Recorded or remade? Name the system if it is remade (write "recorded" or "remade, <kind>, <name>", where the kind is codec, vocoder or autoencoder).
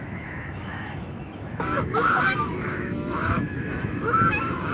remade, autoencoder, DAC-VAE